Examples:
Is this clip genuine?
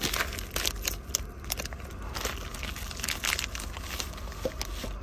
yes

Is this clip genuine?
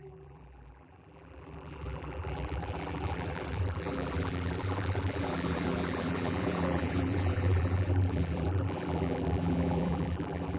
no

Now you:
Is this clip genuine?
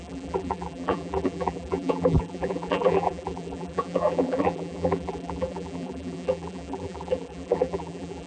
no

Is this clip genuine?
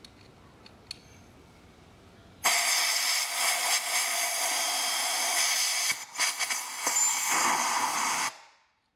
yes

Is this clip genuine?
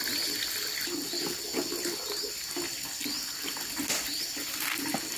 yes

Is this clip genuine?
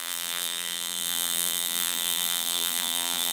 no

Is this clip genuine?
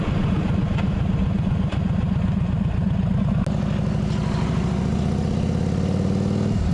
yes